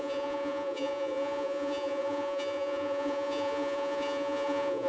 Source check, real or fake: fake